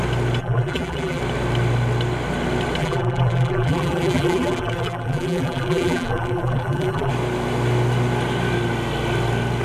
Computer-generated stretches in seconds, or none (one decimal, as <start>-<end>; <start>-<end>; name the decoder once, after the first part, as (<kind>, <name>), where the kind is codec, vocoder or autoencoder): 0.4-1.2 (vocoder, BigVGAN v2); 2.8-7.1